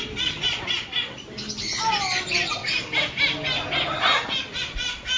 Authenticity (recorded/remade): recorded